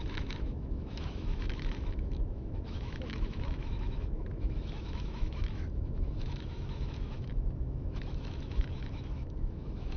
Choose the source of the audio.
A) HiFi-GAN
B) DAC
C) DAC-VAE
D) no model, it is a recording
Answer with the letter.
C